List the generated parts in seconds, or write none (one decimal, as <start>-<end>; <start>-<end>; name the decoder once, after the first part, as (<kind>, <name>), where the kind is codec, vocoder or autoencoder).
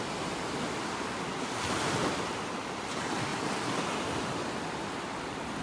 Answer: none